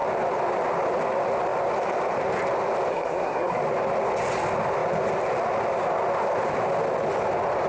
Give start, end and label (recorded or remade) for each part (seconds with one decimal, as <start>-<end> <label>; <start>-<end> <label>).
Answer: 0.0-2.9 recorded; 2.9-3.6 remade; 3.6-7.7 recorded